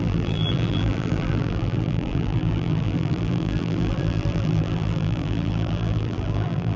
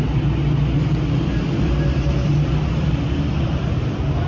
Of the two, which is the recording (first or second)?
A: second